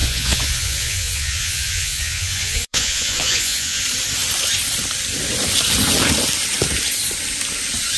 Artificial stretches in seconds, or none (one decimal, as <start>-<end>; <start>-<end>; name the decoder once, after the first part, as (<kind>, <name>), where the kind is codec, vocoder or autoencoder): 0.0-3.8 (vocoder, Vocos)